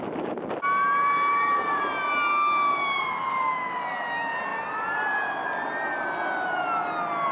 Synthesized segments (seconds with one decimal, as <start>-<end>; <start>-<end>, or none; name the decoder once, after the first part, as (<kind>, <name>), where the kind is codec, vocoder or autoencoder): 1.3-1.8 (codec, DAC); 3.3-3.8